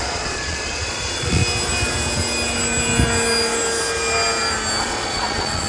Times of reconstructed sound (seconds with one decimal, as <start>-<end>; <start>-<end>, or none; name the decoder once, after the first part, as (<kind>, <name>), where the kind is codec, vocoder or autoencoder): 0.0-1.4 (vocoder, Vocos); 4.8-5.7